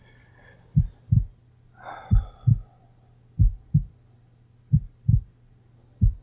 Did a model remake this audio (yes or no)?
no